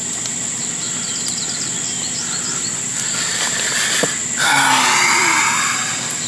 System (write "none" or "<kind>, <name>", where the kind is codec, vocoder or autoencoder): none